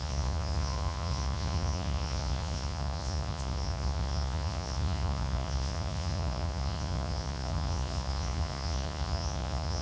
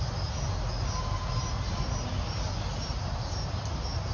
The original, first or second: second